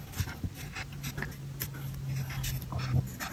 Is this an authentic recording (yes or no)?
yes